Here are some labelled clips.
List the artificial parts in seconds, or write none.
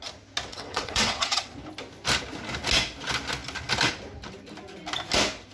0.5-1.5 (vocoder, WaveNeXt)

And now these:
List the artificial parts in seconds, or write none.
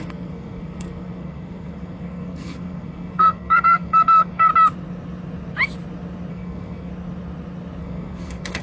0.0-4.5 (codec, SNAC); 6.3-6.9; 7.8-8.6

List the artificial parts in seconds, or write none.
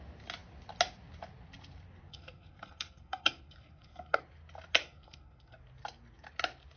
2.1-4.2 (codec, SNAC); 4.8-5.6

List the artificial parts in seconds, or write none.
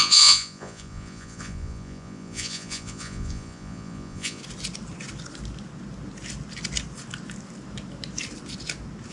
0.0-4.4 (vocoder, Vocos)